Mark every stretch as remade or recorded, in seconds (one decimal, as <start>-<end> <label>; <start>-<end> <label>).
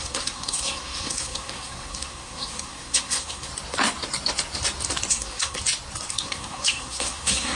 0.0-3.5 remade; 3.5-5.1 recorded; 5.1-5.6 remade; 5.6-6.1 recorded; 6.1-7.6 remade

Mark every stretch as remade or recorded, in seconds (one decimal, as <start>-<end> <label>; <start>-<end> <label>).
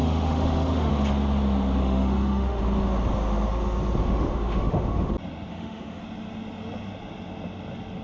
0.0-0.9 remade; 0.9-1.8 recorded; 1.8-2.6 remade; 2.6-4.0 recorded; 4.0-5.1 remade; 5.1-5.5 recorded; 5.5-6.0 remade; 6.0-8.0 recorded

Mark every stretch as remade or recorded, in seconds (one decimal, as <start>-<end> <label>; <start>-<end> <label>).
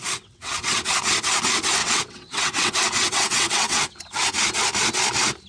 0.0-0.8 remade; 0.8-1.8 recorded; 1.8-4.0 remade; 4.0-5.5 recorded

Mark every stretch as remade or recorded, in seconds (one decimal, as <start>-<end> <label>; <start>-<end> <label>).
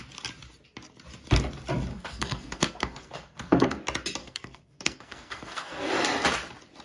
0.0-1.9 recorded; 1.9-3.8 remade; 3.8-4.2 recorded; 4.2-5.9 remade; 5.9-6.8 recorded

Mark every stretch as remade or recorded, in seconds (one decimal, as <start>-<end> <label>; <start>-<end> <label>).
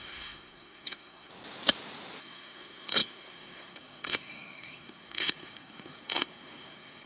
0.0-1.3 remade; 1.3-2.2 recorded; 2.2-7.1 remade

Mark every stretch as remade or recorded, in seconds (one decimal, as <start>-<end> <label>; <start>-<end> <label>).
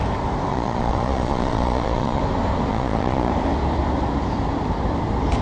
0.0-0.5 recorded; 0.5-2.2 remade; 2.2-2.7 recorded; 2.7-3.3 remade; 3.3-5.4 recorded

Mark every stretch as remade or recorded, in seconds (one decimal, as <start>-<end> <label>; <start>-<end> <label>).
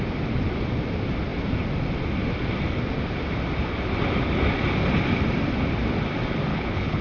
0.0-6.5 recorded; 6.5-7.0 remade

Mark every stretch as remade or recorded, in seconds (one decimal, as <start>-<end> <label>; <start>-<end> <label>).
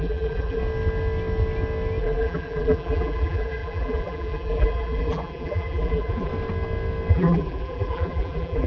0.0-0.6 remade; 0.6-2.0 recorded; 2.0-6.3 remade; 6.3-7.1 recorded; 7.1-8.7 remade